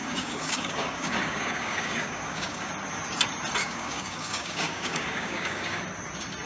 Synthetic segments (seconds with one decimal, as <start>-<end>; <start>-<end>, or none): 0.0-2.7; 3.6-5.8